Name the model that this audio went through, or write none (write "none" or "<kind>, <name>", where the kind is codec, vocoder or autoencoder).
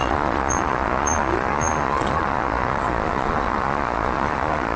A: vocoder, Vocos